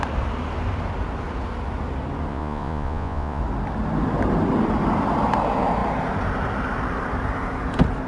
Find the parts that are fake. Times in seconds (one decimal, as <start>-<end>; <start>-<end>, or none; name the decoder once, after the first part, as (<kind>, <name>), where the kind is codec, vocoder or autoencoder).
2.3-3.4 (vocoder, Vocos)